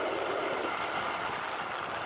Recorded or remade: recorded